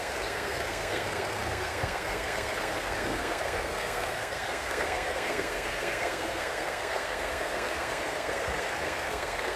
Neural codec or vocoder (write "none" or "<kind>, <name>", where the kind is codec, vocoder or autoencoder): codec, SNAC